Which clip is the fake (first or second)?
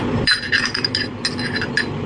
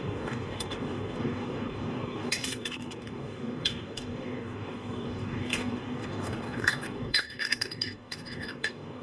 second